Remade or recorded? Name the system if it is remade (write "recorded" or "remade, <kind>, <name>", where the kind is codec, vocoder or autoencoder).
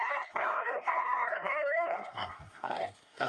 remade, codec, SNAC